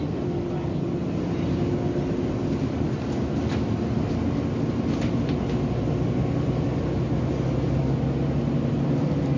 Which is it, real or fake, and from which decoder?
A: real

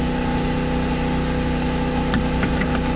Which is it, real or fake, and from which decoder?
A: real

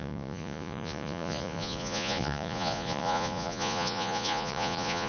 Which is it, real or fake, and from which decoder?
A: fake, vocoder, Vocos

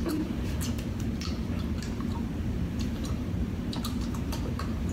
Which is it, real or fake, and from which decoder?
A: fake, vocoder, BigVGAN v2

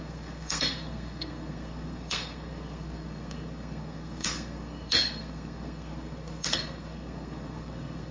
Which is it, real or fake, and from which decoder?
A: fake, codec, SNAC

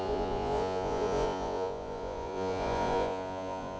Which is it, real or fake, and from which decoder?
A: fake, vocoder, Vocos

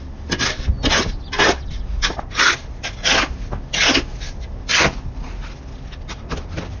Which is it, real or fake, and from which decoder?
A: real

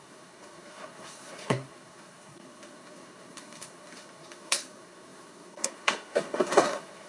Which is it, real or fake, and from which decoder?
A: fake, codec, SNAC